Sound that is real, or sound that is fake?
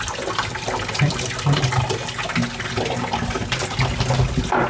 real